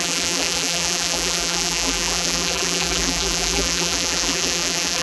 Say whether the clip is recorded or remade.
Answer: remade